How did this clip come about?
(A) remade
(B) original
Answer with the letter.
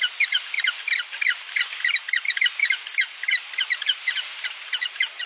A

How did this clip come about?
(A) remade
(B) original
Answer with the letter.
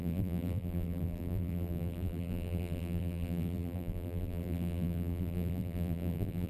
A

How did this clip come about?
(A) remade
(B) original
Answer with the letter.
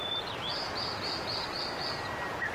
B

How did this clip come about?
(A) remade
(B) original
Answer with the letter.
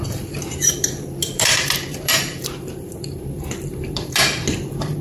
A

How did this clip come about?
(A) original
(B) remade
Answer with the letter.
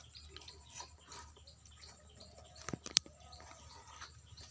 B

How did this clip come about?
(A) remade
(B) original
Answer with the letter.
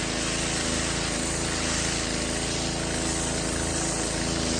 B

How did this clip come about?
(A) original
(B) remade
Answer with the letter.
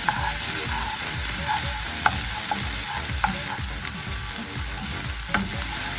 A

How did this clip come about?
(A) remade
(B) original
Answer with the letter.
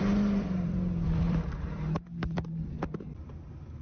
A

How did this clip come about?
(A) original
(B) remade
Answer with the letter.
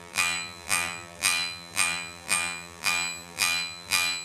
B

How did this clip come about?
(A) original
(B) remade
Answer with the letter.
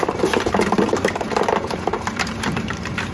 B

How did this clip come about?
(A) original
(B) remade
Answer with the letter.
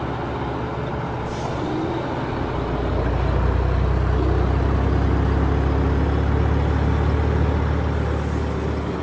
A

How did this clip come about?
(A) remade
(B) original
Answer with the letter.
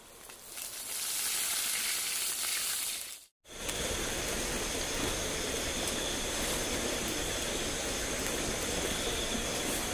B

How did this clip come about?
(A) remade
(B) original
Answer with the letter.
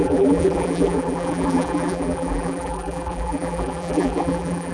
A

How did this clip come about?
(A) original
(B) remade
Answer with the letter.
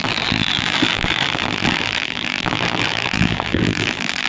B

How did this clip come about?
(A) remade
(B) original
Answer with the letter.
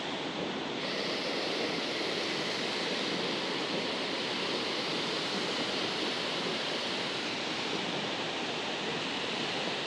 B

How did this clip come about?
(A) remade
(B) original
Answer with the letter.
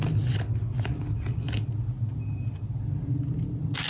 B